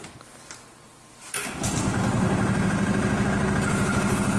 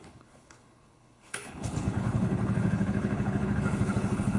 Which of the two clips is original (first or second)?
first